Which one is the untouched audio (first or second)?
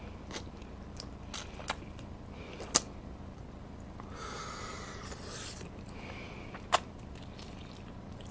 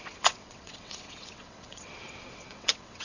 first